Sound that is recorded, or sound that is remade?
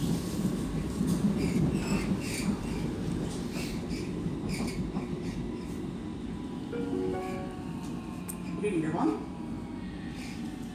recorded